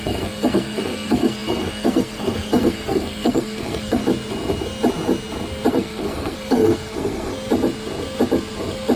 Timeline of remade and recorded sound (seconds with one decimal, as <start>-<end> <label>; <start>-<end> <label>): 0.0-4.0 remade; 4.0-5.7 recorded; 5.7-7.3 remade; 7.3-9.0 recorded